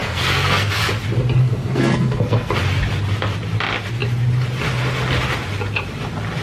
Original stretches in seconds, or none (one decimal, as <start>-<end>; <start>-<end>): 0.9-1.4; 2.5-6.4